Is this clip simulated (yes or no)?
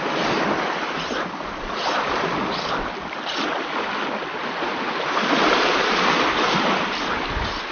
no